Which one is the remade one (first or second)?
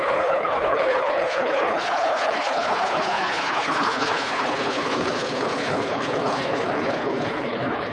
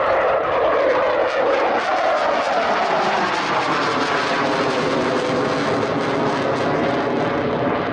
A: first